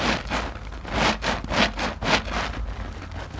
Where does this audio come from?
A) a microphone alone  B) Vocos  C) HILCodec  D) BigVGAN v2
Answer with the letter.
A